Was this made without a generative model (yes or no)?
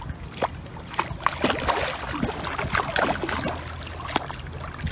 yes